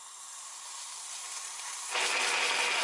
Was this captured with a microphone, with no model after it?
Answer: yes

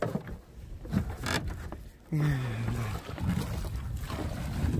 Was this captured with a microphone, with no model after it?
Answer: yes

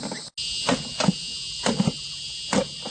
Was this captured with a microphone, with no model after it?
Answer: yes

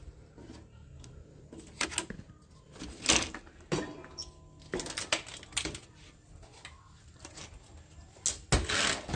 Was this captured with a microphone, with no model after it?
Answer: yes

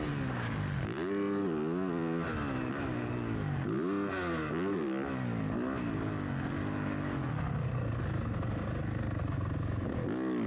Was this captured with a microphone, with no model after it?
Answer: yes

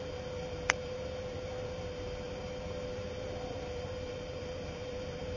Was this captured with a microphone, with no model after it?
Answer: no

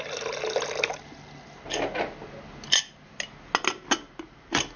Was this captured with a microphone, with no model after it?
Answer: yes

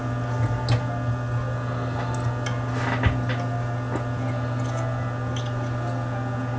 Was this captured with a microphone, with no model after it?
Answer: yes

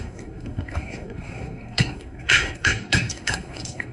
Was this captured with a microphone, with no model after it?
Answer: no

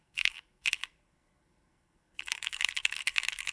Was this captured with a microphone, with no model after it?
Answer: no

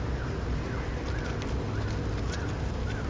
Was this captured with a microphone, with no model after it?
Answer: yes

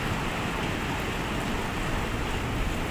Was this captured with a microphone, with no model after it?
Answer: yes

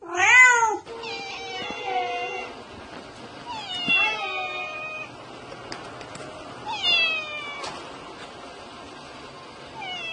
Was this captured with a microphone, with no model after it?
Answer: yes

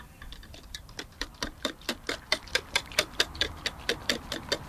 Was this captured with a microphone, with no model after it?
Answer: no